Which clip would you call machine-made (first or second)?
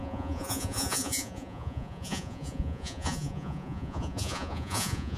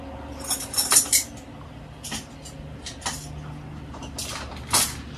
first